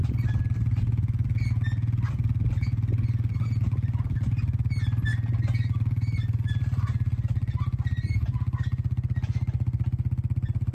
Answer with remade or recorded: recorded